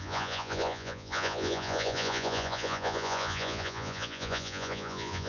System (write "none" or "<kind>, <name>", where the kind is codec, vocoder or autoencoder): vocoder, Vocos